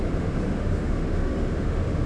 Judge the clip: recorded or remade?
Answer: remade